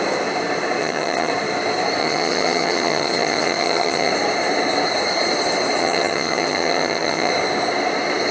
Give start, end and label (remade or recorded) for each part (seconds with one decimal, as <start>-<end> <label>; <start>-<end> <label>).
0.0-0.8 recorded; 0.8-1.3 remade; 1.3-2.0 recorded; 2.0-4.1 remade; 4.1-5.8 recorded; 5.8-7.3 remade; 7.3-8.3 recorded